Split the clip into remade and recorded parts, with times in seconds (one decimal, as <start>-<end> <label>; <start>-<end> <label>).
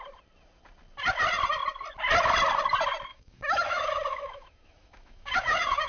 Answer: 0.0-3.1 recorded; 3.1-5.9 remade